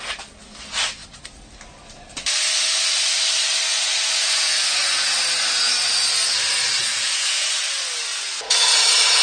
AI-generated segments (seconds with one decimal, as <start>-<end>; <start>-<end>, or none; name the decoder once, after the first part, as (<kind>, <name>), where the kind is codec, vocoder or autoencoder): 3.7-5.1 (vocoder, Vocos); 6.8-7.5; 8.1-9.2